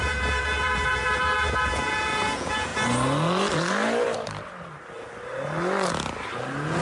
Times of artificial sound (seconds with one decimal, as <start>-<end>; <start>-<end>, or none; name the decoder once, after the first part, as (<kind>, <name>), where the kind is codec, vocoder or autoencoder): 0.0-2.7 (vocoder, Vocos)